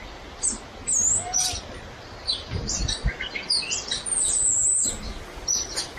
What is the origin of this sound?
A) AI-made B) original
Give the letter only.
B